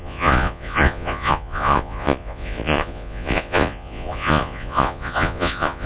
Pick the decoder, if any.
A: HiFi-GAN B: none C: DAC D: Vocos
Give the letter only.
D